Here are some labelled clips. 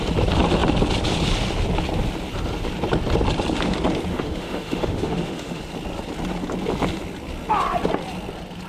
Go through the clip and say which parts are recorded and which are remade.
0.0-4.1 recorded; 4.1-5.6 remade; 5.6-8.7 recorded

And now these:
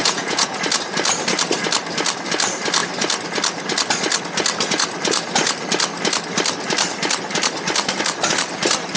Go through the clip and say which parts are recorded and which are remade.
0.0-0.6 remade; 0.6-9.0 recorded

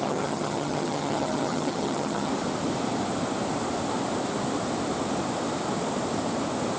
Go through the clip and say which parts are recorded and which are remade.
0.0-2.3 remade; 2.3-6.8 recorded